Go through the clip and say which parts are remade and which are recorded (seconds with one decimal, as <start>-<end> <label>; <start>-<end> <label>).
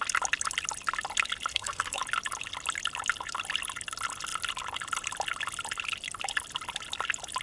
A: 0.0-1.5 recorded; 1.5-2.0 remade; 2.0-7.4 recorded